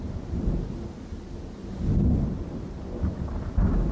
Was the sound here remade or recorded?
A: recorded